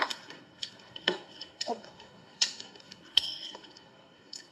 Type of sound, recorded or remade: remade